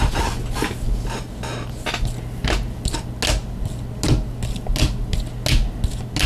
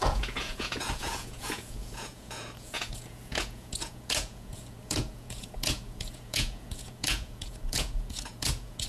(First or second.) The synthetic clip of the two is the second